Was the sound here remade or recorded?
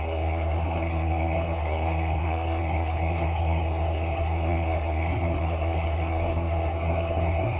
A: remade